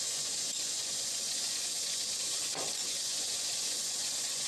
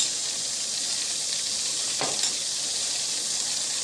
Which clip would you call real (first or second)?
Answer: second